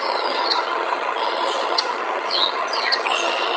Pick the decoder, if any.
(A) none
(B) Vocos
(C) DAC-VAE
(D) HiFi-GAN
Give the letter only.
D